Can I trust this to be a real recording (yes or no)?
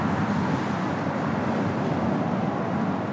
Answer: yes